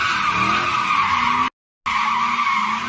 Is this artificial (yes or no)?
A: no